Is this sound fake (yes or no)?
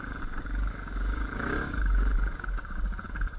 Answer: yes